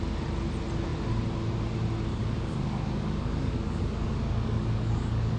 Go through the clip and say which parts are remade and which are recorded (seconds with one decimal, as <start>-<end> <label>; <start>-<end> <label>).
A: 0.0-2.1 recorded; 2.1-5.4 remade